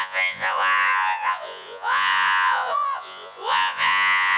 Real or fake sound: fake